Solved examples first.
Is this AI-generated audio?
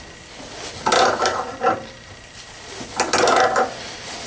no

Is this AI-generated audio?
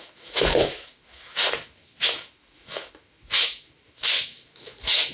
yes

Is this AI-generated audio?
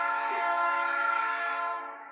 yes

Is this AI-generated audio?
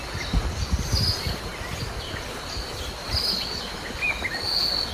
no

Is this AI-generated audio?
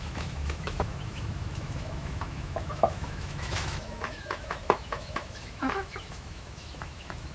yes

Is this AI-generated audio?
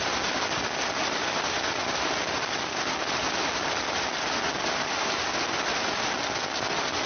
no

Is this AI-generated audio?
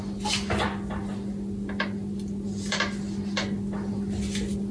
no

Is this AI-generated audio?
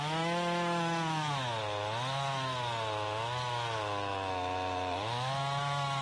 yes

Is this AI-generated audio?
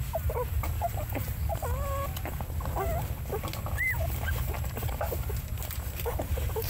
no